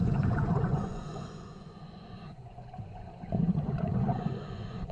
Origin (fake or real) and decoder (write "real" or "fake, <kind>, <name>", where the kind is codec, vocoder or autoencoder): fake, vocoder, Vocos